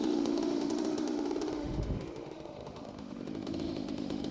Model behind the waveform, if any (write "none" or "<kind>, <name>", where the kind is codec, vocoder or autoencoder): autoencoder, DAC-VAE